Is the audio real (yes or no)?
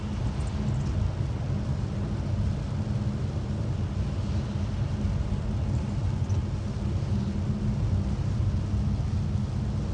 yes